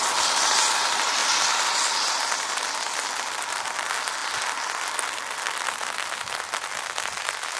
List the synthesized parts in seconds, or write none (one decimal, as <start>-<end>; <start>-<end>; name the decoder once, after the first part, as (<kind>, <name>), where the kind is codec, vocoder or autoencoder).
none

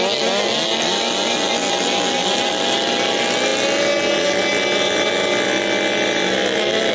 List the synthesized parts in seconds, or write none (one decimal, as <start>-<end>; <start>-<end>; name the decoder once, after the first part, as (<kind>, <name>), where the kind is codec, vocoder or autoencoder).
none

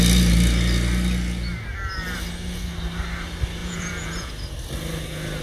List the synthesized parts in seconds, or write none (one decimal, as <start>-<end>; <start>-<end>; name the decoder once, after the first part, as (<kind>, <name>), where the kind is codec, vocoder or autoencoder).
3.6-4.3 (vocoder, Vocos)

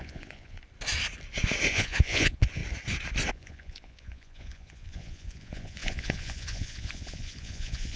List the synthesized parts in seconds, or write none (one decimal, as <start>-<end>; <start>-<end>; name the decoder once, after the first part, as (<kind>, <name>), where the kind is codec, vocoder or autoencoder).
0.0-0.6 (vocoder, Vocos); 1.7-2.6; 3.3-8.0

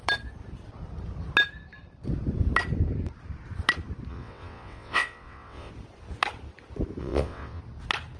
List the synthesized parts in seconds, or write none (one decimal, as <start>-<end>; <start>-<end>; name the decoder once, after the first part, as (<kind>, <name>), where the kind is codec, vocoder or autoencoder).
4.1-5.7 (vocoder, WaveNeXt); 7.0-7.6

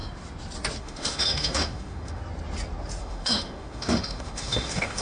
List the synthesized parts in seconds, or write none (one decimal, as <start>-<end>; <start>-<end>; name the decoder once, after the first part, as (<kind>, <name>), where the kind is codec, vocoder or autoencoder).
0.8-2.2 (autoencoder, DAC-VAE); 3.0-5.0

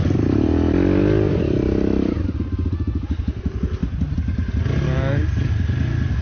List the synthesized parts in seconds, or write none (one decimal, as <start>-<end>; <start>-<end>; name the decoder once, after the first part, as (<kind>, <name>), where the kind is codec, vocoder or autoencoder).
none